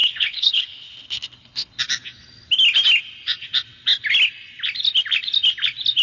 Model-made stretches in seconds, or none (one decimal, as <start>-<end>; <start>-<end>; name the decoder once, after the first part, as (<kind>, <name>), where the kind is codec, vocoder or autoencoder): 0.0-1.8 (codec, HILCodec)